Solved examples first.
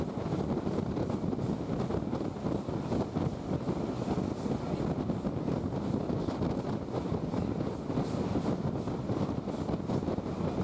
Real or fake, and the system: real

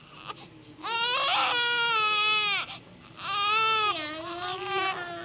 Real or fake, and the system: real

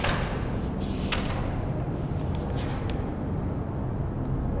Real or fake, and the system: real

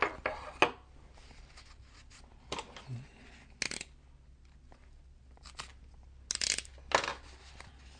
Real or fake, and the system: real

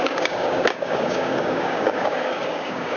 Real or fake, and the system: fake, codec, DAC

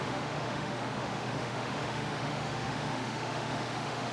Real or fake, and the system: fake, autoencoder, DAC-VAE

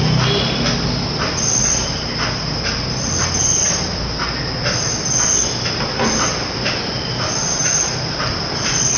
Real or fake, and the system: real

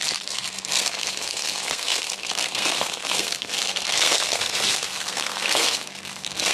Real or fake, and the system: fake, codec, SNAC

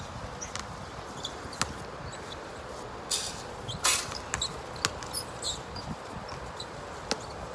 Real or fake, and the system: real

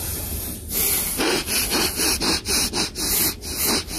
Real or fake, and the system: real